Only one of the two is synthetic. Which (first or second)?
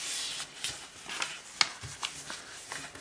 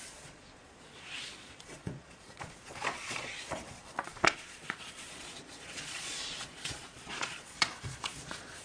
second